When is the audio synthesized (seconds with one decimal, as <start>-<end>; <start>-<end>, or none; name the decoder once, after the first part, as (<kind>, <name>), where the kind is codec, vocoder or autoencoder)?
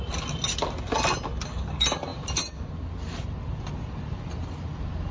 none